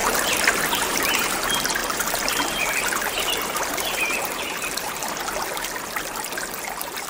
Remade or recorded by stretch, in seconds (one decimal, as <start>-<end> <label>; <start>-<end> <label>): 0.0-0.5 recorded; 0.5-5.0 remade; 5.0-6.4 recorded; 6.4-7.1 remade

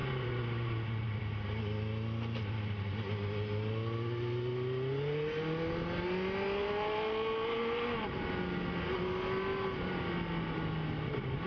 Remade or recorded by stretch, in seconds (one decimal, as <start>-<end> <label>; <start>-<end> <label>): 0.0-1.2 remade; 1.2-11.5 recorded

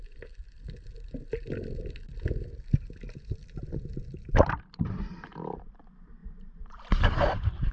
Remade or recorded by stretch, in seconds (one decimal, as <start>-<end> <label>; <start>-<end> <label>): 0.0-0.5 remade; 0.5-5.1 recorded; 5.1-7.7 remade

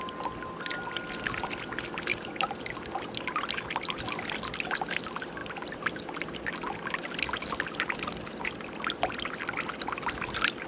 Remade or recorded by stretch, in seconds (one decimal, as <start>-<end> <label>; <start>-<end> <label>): 0.0-2.1 recorded; 2.1-2.7 remade; 2.7-5.4 recorded; 5.4-9.0 remade; 9.0-10.7 recorded

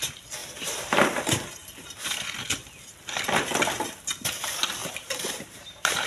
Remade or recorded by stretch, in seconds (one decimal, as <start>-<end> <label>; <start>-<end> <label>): 0.0-0.4 recorded; 0.4-2.0 remade; 2.0-4.8 recorded; 4.8-6.1 remade

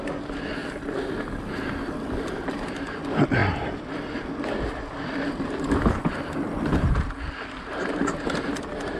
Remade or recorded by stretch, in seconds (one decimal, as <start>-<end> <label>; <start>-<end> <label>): 0.0-3.4 recorded; 3.4-7.2 remade; 7.2-9.0 recorded